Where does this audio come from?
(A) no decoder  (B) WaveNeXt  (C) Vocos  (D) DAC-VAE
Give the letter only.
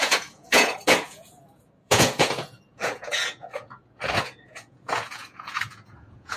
C